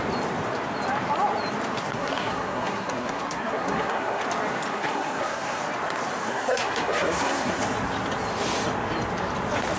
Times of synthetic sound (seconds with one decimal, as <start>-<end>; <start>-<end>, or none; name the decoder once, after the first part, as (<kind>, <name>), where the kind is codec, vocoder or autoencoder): 1.8-4.2 (codec, SNAC); 4.7-5.6; 6.2-7.6